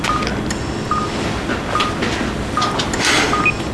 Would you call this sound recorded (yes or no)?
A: yes